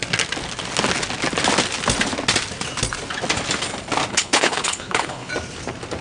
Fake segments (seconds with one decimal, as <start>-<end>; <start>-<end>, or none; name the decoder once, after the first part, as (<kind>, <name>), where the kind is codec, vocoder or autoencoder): 4.1-5.3 (codec, HILCodec)